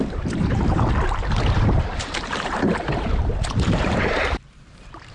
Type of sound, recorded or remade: remade